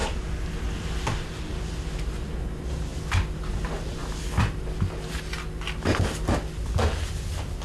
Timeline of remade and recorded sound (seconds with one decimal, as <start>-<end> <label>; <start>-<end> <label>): 0.0-7.6 recorded